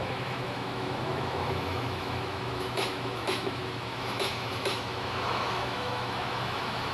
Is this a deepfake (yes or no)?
yes